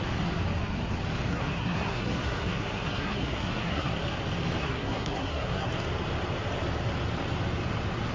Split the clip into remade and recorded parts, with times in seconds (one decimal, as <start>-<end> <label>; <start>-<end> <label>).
0.0-1.3 recorded; 1.3-3.9 remade; 3.9-4.6 recorded; 4.6-5.7 remade; 5.7-8.1 recorded